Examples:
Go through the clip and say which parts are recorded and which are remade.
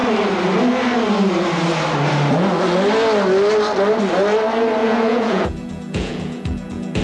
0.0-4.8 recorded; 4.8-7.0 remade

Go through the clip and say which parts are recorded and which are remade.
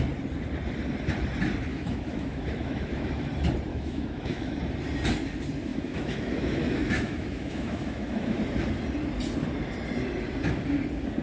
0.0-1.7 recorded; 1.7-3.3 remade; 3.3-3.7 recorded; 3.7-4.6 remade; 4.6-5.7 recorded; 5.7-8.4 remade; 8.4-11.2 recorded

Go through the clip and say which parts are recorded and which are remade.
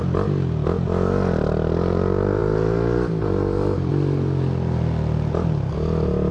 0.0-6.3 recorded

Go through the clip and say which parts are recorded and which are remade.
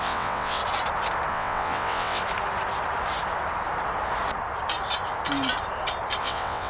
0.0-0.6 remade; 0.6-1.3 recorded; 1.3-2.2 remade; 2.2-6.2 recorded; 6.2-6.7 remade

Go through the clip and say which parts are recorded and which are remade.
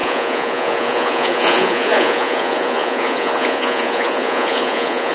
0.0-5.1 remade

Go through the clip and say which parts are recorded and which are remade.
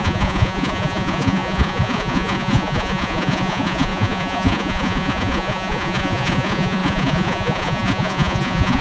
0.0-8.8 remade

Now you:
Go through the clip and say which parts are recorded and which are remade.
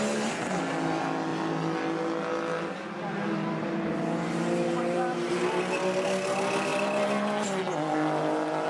0.0-8.7 recorded